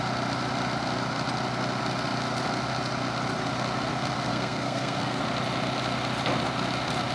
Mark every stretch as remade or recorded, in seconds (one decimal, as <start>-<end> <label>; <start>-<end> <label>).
0.0-4.3 recorded; 4.3-5.2 remade; 5.2-7.1 recorded